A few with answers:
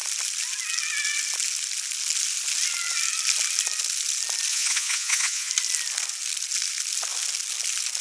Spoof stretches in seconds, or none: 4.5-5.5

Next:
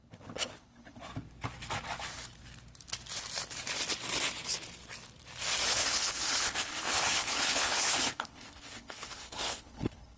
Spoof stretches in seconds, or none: 0.0-1.1; 5.7-10.2

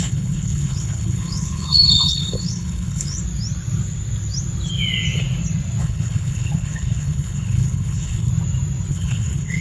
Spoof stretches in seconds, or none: 0.0-3.2; 5.8-8.3; 8.9-9.6

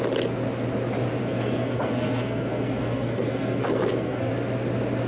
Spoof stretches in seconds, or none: 1.2-4.3

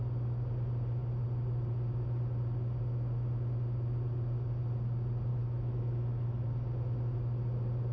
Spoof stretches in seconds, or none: 5.3-6.5